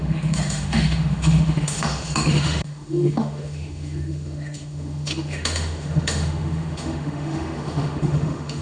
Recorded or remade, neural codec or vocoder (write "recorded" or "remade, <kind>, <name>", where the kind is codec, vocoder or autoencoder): remade, autoencoder, DAC-VAE